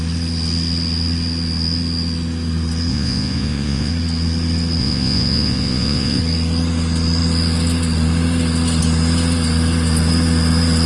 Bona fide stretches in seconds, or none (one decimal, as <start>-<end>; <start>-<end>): 0.0-2.9; 3.9-4.8; 6.2-10.9